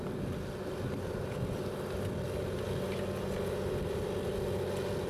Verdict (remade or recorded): recorded